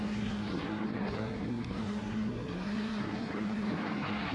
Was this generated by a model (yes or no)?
yes